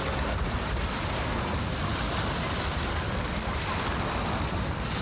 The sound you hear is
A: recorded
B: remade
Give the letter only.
B